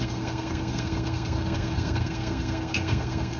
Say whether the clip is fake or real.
fake